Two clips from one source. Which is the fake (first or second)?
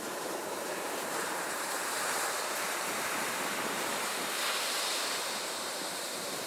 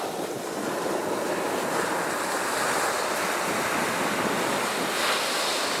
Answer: first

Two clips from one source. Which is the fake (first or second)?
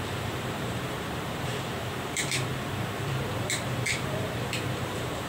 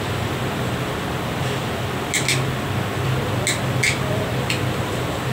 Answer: first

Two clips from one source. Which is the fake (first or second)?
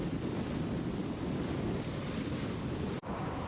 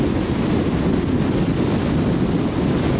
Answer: first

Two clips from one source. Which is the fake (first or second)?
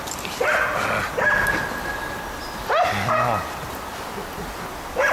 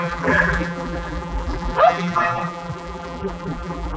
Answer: second